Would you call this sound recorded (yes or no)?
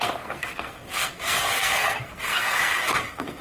no